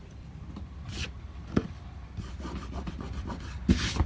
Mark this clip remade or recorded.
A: recorded